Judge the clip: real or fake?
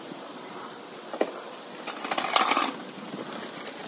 real